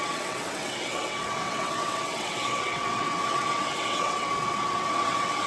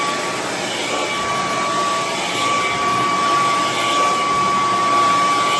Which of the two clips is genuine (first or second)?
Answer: second